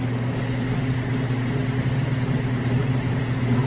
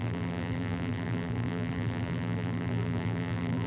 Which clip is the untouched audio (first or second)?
first